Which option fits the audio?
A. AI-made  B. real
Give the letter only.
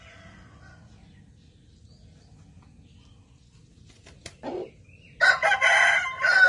B